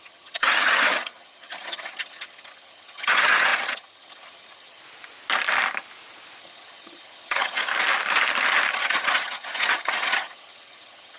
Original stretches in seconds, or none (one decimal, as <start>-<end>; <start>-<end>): 4.8-6.4; 7.7-8.7